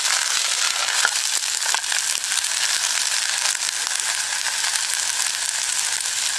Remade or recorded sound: recorded